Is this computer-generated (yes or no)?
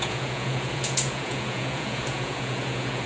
yes